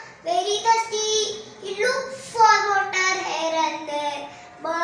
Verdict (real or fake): real